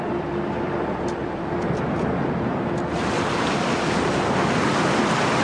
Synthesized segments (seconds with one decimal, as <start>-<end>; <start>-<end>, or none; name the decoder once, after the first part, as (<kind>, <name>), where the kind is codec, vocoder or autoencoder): 0.0-1.2 (vocoder, BigVGAN v2); 4.4-5.4